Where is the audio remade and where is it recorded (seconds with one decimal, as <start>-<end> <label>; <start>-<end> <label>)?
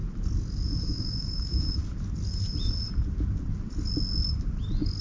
0.0-0.8 recorded; 0.8-1.8 remade; 1.8-5.0 recorded